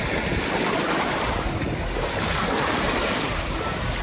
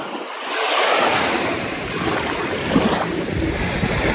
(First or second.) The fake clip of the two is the second